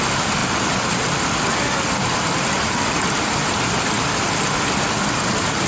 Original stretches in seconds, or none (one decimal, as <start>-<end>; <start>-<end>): 0.0-5.7

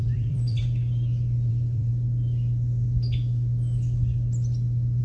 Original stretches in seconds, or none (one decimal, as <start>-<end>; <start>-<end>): 0.6-1.5; 1.9-5.0

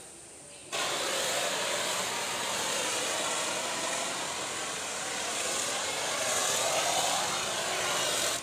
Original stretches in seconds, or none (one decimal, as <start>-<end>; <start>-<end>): 6.4-6.9

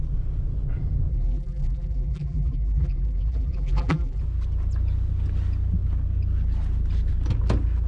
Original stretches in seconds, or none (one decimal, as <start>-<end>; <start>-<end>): 0.0-1.1; 4.2-7.9